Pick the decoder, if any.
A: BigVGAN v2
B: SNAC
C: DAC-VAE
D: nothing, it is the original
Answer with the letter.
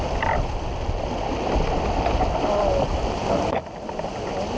D